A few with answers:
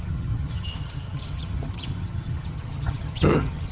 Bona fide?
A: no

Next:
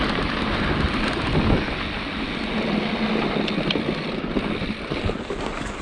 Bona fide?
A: yes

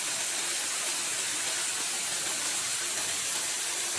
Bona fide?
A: yes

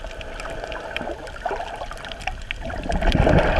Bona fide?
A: yes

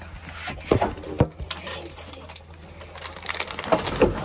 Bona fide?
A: yes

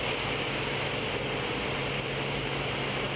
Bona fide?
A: yes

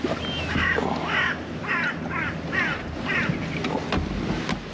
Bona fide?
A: yes